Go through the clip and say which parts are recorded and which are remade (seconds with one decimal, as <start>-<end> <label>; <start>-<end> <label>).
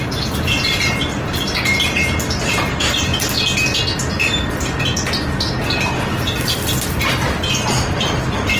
0.0-3.1 remade; 3.1-7.7 recorded; 7.7-8.6 remade